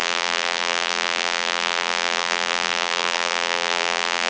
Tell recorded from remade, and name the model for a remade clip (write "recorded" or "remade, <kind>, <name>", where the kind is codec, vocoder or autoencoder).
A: remade, vocoder, BigVGAN v2